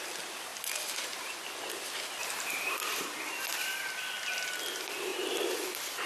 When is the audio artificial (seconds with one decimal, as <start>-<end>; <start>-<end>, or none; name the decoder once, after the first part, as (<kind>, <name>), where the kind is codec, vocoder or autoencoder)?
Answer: 2.2-2.8 (vocoder, BigVGAN v2)